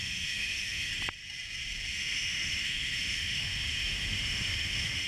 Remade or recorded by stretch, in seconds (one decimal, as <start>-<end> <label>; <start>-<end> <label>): 0.0-0.9 remade; 0.9-1.9 recorded; 1.9-5.1 remade

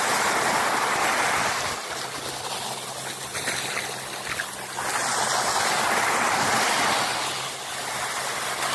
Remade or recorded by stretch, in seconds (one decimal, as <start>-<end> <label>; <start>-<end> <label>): 0.0-8.7 recorded

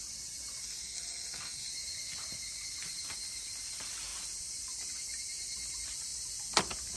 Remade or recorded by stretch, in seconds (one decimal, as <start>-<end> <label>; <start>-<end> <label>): 0.0-0.6 recorded; 0.6-1.7 remade; 1.7-7.0 recorded

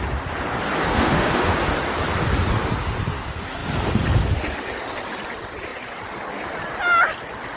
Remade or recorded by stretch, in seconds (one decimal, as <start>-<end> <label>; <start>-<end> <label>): 0.0-0.9 recorded; 0.9-1.6 remade; 1.6-7.6 recorded

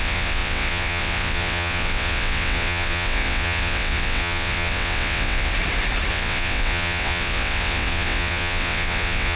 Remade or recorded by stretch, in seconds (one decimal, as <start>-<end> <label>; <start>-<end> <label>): 0.0-5.5 remade; 5.5-6.1 recorded; 6.1-9.4 remade

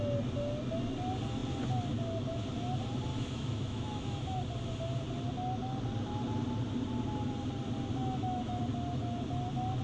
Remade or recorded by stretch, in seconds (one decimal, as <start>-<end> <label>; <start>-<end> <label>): 0.0-3.1 recorded; 3.1-4.4 remade; 4.4-8.0 recorded; 8.0-8.6 remade; 8.6-9.8 recorded